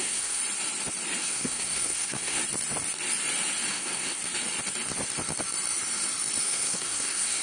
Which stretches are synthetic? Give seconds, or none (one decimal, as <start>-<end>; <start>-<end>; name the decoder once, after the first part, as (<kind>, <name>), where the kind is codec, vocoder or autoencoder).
0.0-0.4 (codec, SNAC); 1.2-2.4; 3.7-4.2; 6.4-7.4

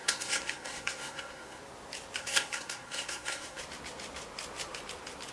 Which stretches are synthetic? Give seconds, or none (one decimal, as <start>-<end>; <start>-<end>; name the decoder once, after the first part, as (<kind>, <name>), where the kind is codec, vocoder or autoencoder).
0.0-1.6 (codec, SNAC); 2.2-3.6

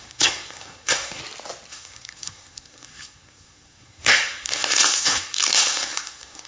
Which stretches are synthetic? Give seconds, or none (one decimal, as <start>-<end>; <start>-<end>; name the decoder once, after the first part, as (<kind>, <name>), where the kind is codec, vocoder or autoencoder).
0.0-1.2 (codec, SNAC); 1.7-6.5

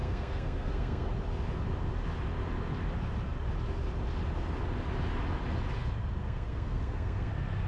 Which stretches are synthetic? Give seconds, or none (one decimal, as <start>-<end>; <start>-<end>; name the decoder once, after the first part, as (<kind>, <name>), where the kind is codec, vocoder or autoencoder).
0.0-1.1 (codec, SNAC); 6.2-7.3

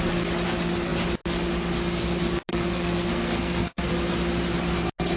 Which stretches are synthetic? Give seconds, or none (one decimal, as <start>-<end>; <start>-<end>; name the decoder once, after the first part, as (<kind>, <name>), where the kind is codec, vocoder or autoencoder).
2.5-3.9 (codec, SNAC)

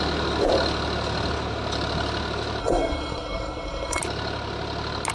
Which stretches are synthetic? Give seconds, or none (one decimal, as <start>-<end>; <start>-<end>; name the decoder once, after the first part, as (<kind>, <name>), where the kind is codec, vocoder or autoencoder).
2.6-4.0 (codec, SNAC)

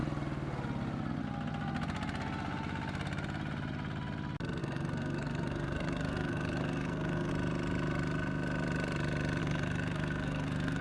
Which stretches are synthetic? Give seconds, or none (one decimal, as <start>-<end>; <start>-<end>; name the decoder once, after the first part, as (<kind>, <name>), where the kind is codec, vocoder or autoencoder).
4.6-7.3 (codec, SNAC); 9.4-10.8